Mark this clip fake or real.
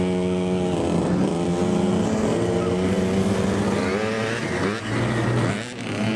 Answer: real